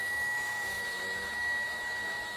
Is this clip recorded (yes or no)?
no